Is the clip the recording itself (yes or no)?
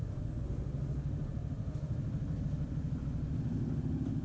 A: yes